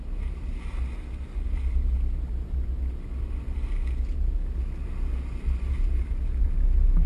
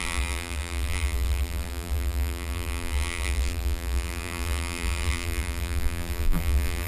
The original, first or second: first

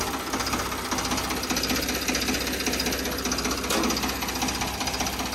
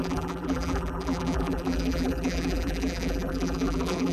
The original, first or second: first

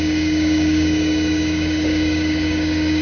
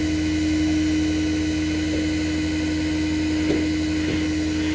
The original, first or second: second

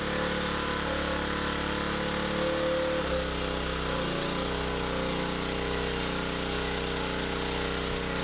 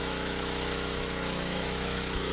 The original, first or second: first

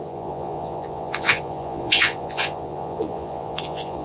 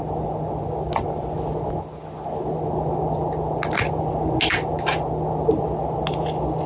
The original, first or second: second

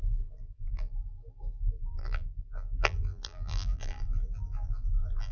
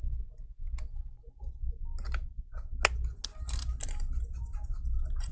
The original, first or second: second